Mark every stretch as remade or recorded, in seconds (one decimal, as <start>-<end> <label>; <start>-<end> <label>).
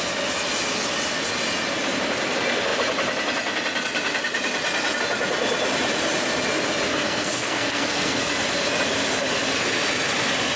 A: 0.0-6.9 recorded; 6.9-8.3 remade; 8.3-10.6 recorded